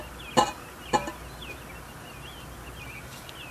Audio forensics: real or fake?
real